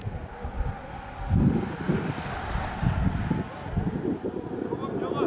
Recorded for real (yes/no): yes